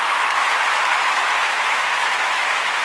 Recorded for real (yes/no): no